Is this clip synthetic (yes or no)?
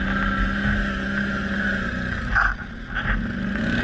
no